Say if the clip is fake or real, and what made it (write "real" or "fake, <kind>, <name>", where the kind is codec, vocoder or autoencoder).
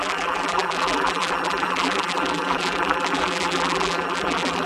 fake, vocoder, BigVGAN v2